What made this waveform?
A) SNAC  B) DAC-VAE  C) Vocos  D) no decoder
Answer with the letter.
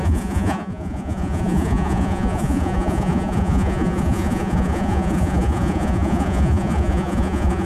C